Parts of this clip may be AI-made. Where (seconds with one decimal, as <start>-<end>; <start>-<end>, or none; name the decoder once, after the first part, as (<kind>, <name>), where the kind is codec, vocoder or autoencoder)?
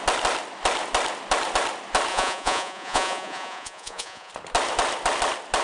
2.1-4.3 (vocoder, Vocos)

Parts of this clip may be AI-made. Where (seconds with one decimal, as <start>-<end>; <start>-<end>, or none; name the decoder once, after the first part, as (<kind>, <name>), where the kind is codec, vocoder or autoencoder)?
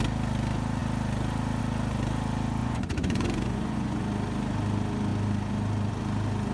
2.6-4.0 (vocoder, Vocos)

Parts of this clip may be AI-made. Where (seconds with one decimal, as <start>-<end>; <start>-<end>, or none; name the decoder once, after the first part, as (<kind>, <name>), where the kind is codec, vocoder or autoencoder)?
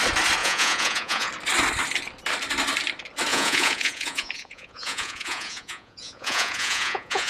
0.4-1.3 (vocoder, Vocos); 3.3-7.3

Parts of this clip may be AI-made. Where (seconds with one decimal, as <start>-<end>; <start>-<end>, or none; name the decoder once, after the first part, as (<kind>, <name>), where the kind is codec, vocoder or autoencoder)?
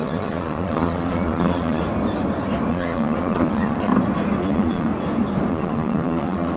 0.0-1.8 (vocoder, Vocos); 2.7-3.9; 4.4-4.9; 5.5-6.6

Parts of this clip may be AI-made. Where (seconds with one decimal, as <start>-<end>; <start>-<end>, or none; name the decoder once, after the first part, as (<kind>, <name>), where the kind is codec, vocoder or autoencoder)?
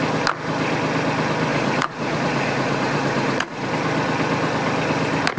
1.5-3.7 (vocoder, Vocos)